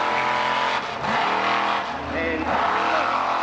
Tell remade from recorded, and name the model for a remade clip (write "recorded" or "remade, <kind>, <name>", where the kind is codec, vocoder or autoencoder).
recorded